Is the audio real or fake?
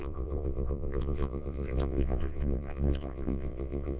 fake